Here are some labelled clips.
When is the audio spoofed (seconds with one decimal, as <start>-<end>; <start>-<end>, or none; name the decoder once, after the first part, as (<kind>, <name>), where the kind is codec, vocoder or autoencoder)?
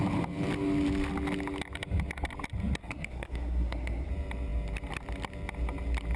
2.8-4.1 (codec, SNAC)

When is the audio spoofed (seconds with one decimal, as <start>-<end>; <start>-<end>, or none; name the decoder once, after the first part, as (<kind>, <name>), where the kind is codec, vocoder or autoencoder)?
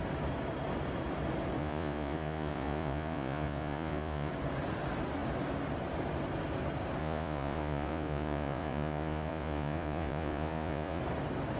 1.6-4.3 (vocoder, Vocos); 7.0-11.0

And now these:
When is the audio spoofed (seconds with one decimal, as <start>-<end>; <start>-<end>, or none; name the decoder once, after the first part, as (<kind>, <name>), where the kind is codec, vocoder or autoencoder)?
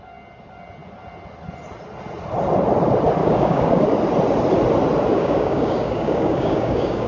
3.2-3.8 (codec, DAC); 5.1-7.1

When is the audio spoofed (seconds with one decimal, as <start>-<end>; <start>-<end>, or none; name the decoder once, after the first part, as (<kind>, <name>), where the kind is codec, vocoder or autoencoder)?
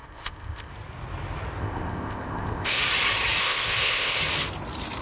0.0-0.7 (codec, ZipCodec); 1.6-2.8; 3.4-4.2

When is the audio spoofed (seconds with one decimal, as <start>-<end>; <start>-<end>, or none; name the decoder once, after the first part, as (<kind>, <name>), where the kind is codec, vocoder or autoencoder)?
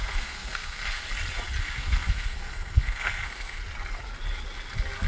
0.0-1.0 (codec, SNAC); 1.6-3.6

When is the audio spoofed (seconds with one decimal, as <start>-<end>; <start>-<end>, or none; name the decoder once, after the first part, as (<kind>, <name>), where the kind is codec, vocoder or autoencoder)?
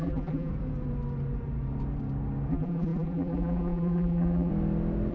0.0-0.5 (vocoder, BigVGAN v2); 2.5-4.5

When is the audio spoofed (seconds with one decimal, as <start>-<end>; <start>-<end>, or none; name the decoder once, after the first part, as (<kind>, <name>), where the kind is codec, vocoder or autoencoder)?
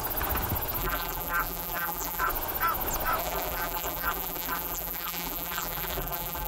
0.8-2.3 (vocoder, BigVGAN v2); 3.2-6.5